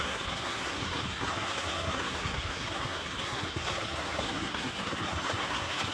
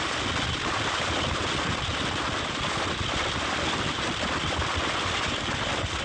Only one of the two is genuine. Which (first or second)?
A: second